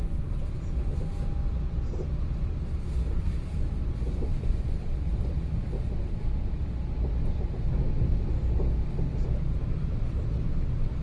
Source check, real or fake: real